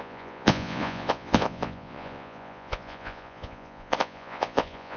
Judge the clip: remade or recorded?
remade